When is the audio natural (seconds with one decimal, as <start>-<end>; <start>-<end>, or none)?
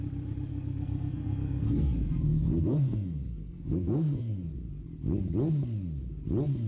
0.0-0.5; 4.5-6.7